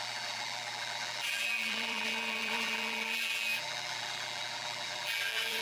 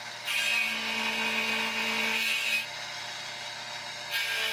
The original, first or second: second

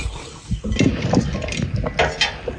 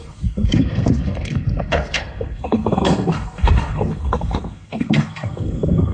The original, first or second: first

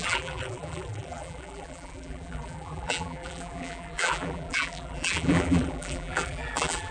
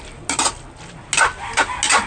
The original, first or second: second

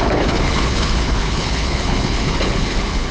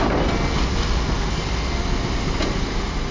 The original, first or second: second